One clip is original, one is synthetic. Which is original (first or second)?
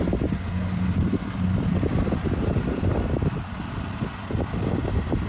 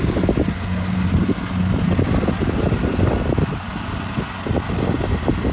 second